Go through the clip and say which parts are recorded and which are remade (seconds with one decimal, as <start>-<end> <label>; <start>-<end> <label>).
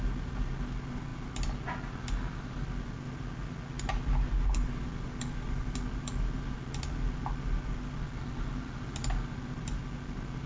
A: 0.0-10.5 recorded